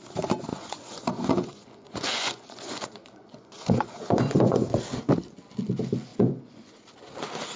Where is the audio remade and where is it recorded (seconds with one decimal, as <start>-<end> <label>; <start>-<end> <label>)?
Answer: 0.0-0.5 recorded; 0.5-5.1 remade; 5.1-6.1 recorded; 6.1-6.7 remade; 6.7-7.6 recorded